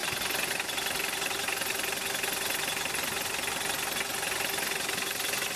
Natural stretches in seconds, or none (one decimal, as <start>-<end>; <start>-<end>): 0.0-5.6

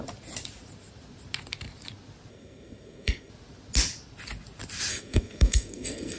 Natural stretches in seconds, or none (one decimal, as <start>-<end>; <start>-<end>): 0.0-2.3; 3.3-4.9

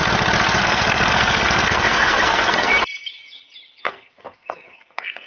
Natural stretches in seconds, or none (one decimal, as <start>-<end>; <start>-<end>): 0.0-0.6; 2.7-3.8